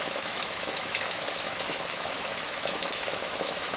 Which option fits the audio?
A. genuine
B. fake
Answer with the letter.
B